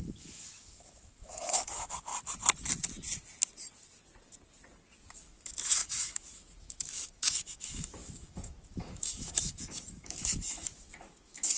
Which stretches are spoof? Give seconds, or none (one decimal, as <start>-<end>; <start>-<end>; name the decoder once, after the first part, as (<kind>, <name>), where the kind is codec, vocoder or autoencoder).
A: 0.0-2.1 (autoencoder, DAC-VAE); 5.1-11.6